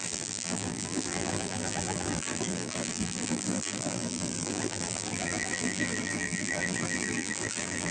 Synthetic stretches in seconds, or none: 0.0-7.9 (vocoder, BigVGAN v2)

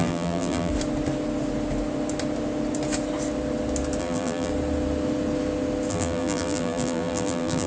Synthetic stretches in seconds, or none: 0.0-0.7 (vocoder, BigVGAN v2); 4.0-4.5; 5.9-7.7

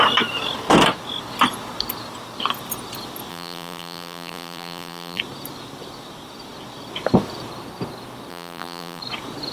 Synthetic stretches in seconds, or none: 3.3-5.2 (vocoder, BigVGAN v2); 8.3-9.0